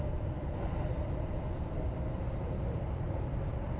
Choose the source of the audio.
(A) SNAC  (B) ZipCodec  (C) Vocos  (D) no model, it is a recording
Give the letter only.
D